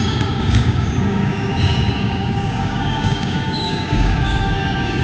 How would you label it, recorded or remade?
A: remade